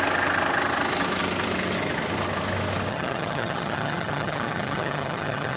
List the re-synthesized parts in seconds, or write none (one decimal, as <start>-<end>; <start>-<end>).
2.9-5.6